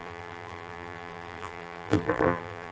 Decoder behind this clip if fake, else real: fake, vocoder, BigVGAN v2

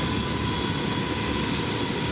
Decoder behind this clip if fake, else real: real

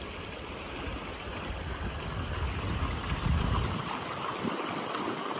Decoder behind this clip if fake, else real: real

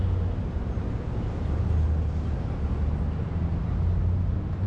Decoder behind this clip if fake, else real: real